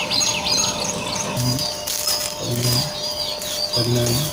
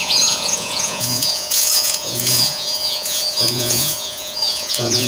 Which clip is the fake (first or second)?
second